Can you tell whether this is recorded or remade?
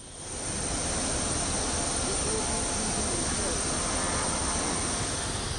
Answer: recorded